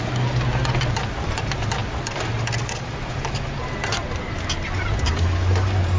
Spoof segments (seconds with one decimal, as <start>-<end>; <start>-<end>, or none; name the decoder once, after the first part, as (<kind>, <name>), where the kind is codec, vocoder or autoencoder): none